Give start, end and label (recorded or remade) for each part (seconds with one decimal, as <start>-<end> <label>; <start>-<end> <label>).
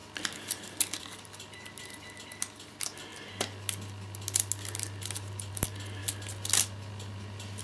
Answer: 0.0-7.6 recorded